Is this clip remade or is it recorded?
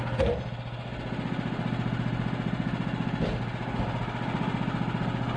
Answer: recorded